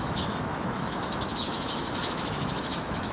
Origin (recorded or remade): remade